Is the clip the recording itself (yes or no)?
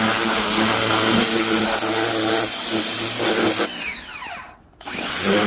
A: yes